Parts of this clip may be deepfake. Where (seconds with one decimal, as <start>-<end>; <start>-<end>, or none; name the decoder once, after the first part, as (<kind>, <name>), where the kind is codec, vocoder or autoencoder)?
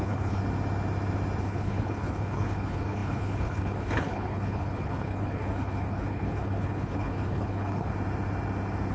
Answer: 0.0-0.4 (codec, HILCodec); 1.4-7.9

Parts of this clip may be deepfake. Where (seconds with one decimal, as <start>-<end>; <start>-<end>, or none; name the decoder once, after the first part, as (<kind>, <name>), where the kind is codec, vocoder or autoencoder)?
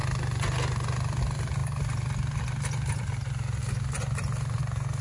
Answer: none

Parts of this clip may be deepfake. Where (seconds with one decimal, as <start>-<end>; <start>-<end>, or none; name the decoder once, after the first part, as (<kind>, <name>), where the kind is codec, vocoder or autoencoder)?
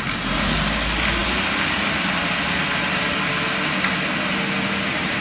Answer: none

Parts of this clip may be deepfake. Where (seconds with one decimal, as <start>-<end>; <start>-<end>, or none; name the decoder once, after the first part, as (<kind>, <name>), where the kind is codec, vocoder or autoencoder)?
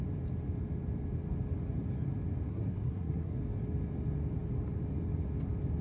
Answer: 2.5-3.4 (codec, SNAC)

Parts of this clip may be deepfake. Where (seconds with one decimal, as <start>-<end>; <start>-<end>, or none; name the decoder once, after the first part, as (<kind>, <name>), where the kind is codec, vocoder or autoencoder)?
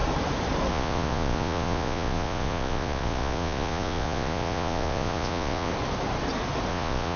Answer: 0.7-5.7 (vocoder, Vocos); 6.7-7.2